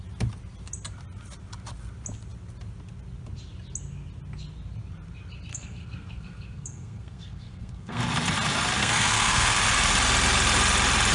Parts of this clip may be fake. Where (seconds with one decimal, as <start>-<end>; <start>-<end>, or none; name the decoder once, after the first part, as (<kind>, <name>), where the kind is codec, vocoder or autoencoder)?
5.5-8.0 (codec, SNAC); 8.8-9.6